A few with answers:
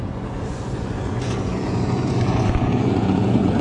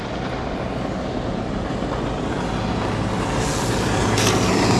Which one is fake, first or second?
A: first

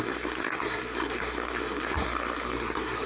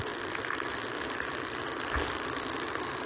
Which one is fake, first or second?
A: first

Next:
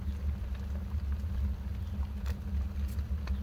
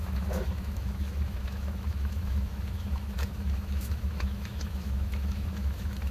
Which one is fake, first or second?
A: second